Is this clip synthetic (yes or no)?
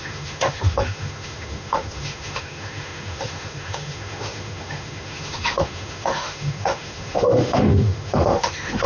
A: yes